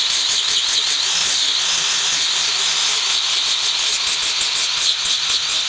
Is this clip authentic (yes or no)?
yes